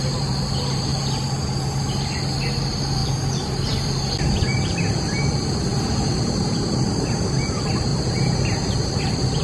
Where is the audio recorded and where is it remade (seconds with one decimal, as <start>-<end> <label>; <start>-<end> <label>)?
0.0-3.0 recorded; 3.0-3.6 remade; 3.6-5.7 recorded; 5.7-7.1 remade; 7.1-7.9 recorded; 7.9-9.0 remade; 9.0-9.4 recorded